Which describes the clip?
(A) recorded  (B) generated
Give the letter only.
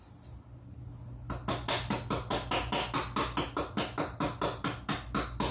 A